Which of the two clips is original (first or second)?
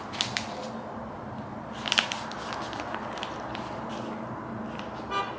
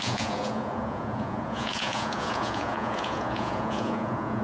first